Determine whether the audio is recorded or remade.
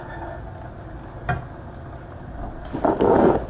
recorded